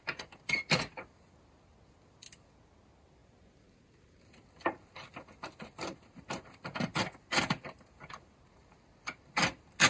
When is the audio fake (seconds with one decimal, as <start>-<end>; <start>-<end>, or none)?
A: 6.9-7.8